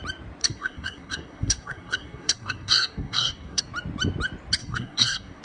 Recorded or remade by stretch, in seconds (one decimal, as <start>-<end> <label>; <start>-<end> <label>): 0.0-0.4 recorded; 0.4-3.6 remade; 3.6-4.6 recorded; 4.6-5.4 remade